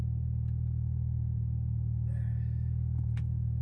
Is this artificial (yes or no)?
no